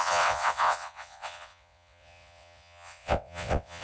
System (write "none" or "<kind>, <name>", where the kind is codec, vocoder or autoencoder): vocoder, WaveNeXt